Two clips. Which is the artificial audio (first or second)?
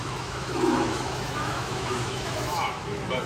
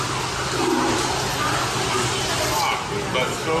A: first